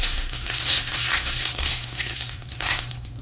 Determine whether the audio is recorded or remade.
remade